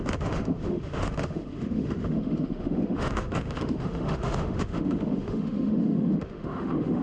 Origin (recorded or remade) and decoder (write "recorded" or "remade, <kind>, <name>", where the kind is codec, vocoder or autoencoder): remade, autoencoder, DAC-VAE